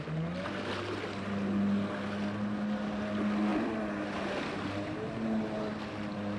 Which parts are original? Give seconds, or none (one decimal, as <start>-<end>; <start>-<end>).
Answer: 0.0-6.4